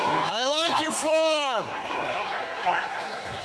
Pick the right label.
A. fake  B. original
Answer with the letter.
A